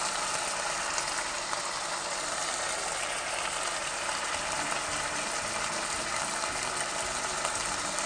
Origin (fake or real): real